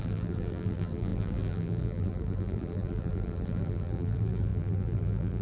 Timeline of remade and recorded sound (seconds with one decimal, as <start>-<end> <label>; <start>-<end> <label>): 0.0-5.4 remade